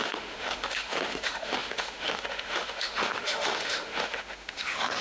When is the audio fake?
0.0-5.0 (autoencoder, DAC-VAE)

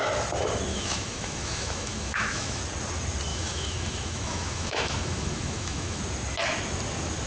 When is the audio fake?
0.7-2.6 (autoencoder, DAC-VAE); 3.3-6.0

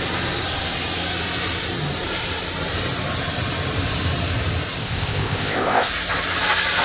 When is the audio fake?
4.8-5.9 (codec, ZipCodec)